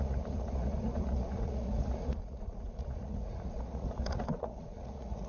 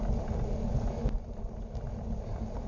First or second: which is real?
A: second